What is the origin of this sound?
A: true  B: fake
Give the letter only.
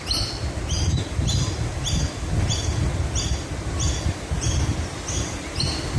A